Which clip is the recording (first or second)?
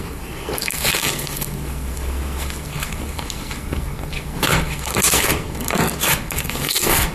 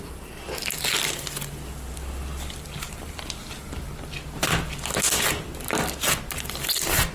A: second